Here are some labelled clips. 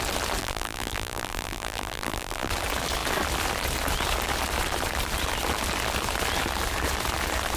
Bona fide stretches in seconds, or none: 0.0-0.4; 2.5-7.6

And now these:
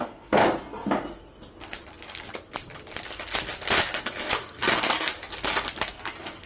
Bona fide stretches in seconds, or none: 0.4-4.3; 5.1-5.8

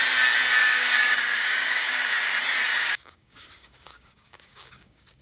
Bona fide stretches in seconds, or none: 0.0-0.6; 2.3-2.7

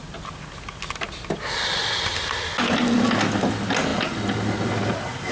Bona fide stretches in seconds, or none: 0.0-5.3

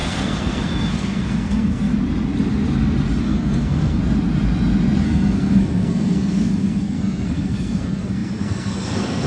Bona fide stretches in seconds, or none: 1.9-3.2; 4.0-5.0

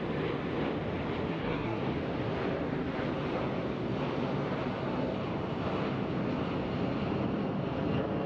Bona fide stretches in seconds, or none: 0.0-1.3; 1.8-8.3